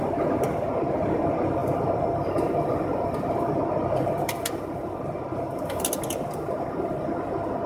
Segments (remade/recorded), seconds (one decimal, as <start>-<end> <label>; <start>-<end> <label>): 0.0-1.6 recorded; 1.6-5.8 remade; 5.8-7.7 recorded